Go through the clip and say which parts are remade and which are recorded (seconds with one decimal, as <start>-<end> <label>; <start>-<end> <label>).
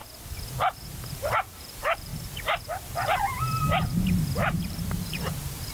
0.0-0.9 recorded; 0.9-5.7 remade